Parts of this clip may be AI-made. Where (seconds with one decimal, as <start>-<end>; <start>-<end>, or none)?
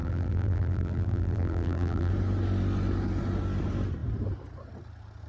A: 0.0-2.1